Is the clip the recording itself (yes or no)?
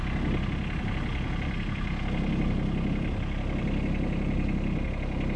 yes